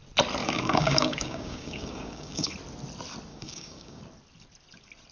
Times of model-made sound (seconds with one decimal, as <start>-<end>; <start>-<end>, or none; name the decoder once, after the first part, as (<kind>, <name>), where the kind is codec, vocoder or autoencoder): 0.4-2.5 (codec, DAC); 3.3-4.0